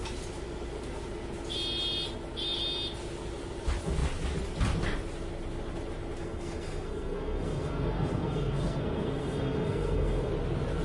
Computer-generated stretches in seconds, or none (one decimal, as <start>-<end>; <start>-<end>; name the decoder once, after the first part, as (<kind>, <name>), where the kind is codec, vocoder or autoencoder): 6.2-10.3 (codec, SNAC)